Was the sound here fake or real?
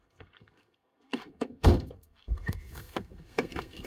fake